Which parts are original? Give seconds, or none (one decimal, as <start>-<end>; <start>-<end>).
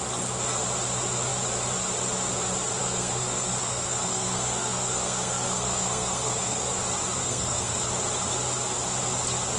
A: 0.0-2.8; 6.8-7.2; 7.9-9.6